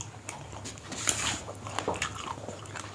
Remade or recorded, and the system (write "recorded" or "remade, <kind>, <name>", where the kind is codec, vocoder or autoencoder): remade, vocoder, BigVGAN v2